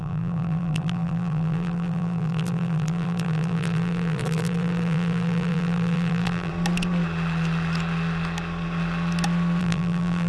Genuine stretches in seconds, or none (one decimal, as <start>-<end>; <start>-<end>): 6.5-9.6